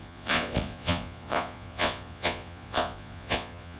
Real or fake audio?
fake